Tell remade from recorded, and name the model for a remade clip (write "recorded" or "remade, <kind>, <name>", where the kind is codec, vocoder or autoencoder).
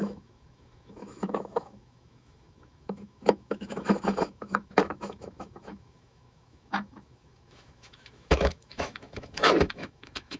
remade, autoencoder, DAC-VAE